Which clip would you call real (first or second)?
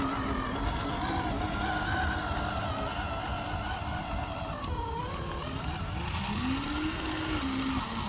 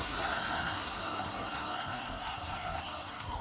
first